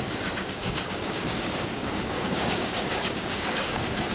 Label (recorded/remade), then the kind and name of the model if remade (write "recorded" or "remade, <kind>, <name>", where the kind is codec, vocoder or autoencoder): remade, codec, DAC